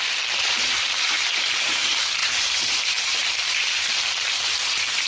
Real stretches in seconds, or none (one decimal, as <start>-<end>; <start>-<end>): none